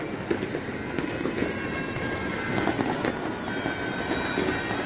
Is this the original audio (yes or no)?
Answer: yes